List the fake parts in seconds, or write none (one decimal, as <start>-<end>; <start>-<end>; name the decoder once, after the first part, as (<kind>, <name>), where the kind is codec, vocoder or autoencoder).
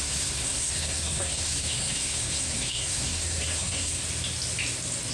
0.0-4.0 (codec, SNAC)